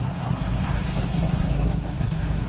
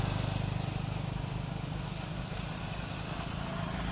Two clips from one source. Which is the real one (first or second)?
second